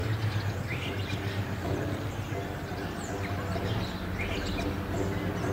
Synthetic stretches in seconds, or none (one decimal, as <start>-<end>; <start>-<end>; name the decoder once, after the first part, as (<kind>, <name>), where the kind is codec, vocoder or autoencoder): none